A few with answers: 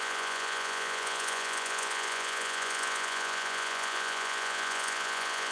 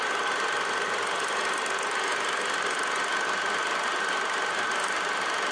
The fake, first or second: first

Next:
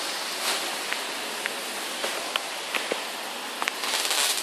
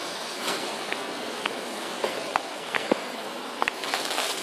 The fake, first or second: second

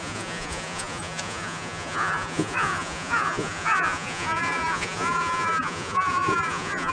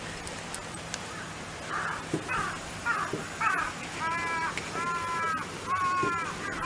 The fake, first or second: first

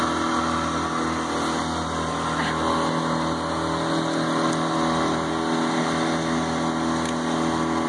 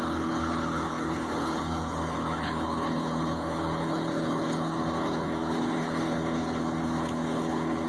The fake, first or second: second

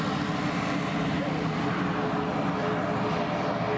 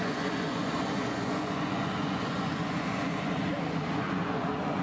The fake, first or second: second